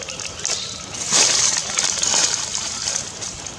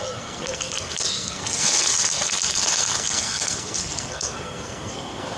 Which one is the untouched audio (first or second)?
first